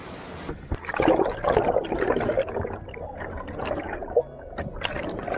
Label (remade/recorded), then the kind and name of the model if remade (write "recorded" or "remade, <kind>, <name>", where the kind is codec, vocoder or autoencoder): recorded